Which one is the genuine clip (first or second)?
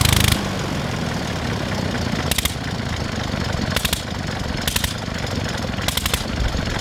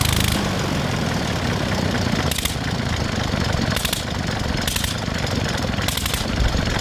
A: first